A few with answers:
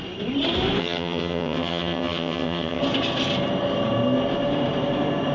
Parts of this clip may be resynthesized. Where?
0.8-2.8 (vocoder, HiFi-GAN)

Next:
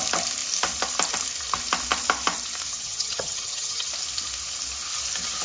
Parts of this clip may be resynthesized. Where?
2.7-3.9 (vocoder, HiFi-GAN)

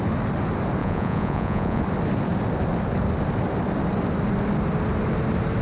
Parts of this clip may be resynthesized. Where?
0.8-1.8 (vocoder, Vocos)

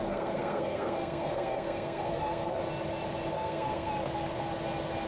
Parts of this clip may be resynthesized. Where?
0.0-2.6 (codec, SNAC); 3.3-3.9

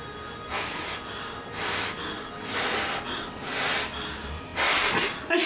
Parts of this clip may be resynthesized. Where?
none

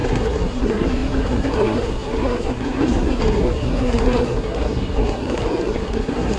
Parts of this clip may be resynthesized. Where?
0.0-6.4 (codec, SNAC)